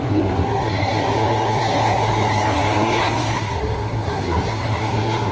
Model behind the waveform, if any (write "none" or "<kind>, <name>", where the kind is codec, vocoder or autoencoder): codec, SNAC